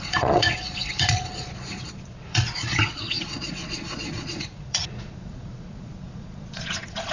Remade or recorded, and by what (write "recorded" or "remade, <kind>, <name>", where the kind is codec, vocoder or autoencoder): remade, vocoder, Vocos